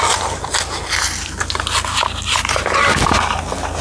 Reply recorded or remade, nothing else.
recorded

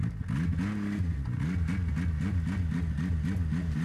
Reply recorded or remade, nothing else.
recorded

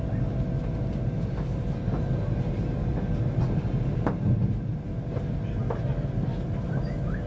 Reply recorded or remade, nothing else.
recorded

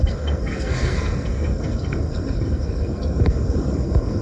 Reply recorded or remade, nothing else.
remade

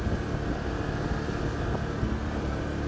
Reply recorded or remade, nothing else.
recorded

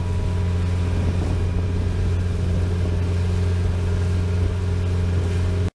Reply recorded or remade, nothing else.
recorded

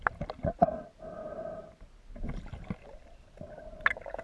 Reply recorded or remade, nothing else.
recorded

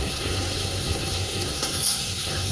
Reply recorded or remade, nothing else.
remade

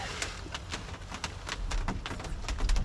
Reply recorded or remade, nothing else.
recorded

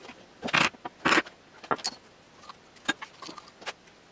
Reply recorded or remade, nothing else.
recorded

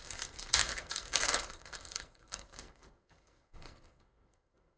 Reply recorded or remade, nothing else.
remade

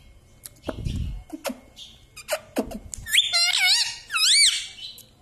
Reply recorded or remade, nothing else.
recorded